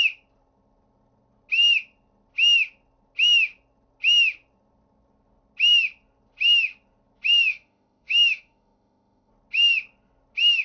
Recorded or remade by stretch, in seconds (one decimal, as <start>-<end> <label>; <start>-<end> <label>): 0.0-7.5 recorded; 7.5-9.3 remade; 9.3-10.6 recorded

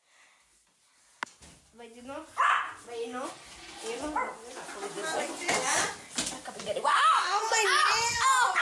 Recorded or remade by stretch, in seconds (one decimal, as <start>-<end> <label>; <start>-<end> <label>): 0.0-6.9 recorded; 6.9-7.4 remade; 7.4-8.6 recorded